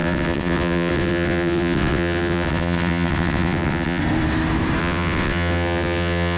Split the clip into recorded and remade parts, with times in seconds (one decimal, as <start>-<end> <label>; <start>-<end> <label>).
0.0-4.0 remade; 4.0-4.8 recorded; 4.8-6.4 remade